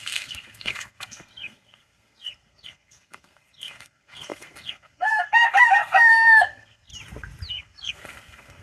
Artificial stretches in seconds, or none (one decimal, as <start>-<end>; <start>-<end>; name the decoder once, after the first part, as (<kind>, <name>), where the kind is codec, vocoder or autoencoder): 0.0-6.9 (codec, SNAC); 7.5-8.6